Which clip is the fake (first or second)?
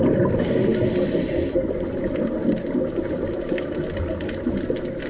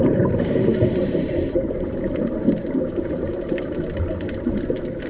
second